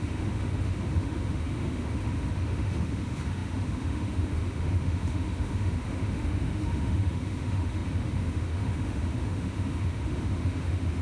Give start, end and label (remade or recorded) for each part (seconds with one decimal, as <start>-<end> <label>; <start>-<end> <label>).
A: 0.0-11.0 remade